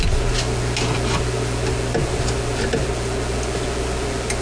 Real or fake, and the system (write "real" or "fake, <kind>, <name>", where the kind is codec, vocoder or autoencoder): real